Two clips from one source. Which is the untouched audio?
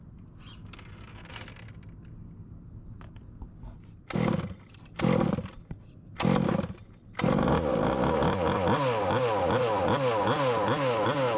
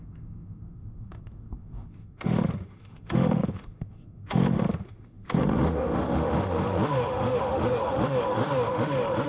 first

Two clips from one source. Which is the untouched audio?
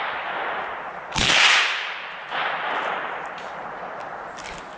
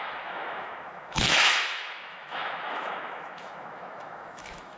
first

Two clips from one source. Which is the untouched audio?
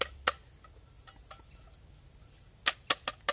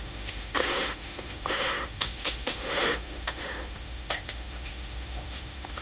first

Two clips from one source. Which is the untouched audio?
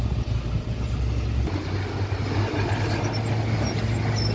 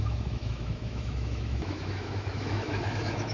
first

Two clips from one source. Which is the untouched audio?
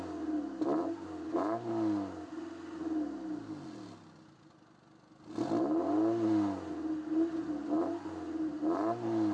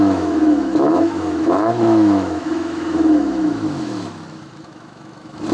first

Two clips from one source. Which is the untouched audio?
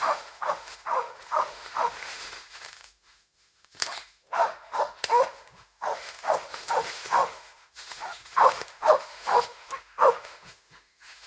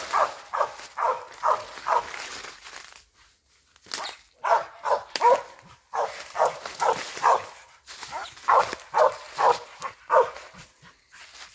second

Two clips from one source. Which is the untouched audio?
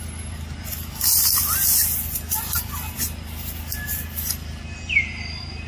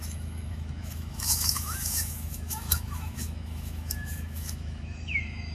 first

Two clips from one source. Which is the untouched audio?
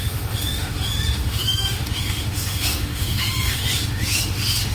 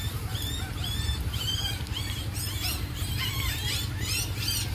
second